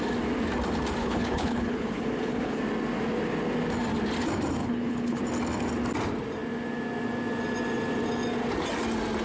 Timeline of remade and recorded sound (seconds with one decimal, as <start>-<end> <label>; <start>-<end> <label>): 0.0-1.0 recorded; 1.0-2.6 remade; 2.6-4.6 recorded; 4.6-5.2 remade; 5.2-9.2 recorded

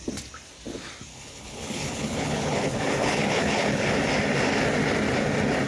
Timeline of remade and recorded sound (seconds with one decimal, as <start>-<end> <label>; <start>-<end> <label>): 0.0-1.1 recorded; 1.1-3.9 remade; 3.9-5.7 recorded